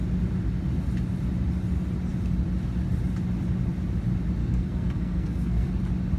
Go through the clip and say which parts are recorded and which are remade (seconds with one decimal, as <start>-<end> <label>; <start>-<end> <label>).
0.0-4.4 recorded; 4.4-5.7 remade; 5.7-6.2 recorded